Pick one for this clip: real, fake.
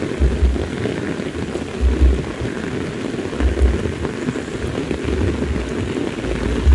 real